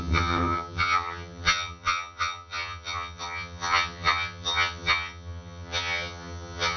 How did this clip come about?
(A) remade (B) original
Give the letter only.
A